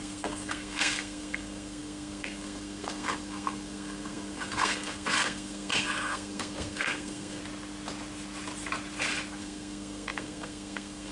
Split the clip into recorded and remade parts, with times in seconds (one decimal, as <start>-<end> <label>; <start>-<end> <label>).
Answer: 0.0-7.4 remade; 7.4-9.4 recorded; 9.4-11.1 remade